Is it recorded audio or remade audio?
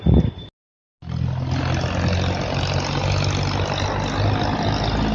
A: recorded